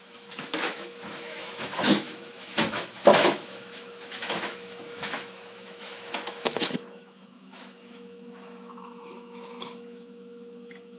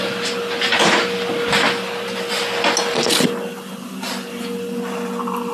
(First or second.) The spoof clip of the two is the first